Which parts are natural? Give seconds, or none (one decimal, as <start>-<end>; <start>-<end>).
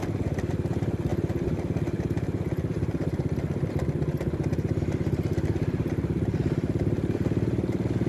0.0-8.1